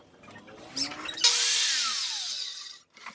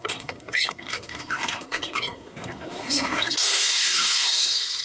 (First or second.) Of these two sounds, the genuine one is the first